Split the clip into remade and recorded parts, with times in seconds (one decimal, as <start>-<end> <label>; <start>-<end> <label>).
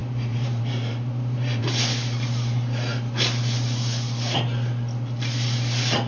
0.0-1.8 remade; 1.8-6.1 recorded